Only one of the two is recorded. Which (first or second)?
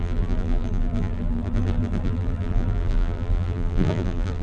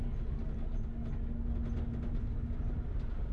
second